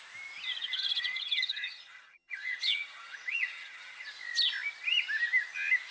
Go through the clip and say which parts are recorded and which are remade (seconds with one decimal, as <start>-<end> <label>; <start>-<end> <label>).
0.0-0.6 recorded; 0.6-4.1 remade; 4.1-5.9 recorded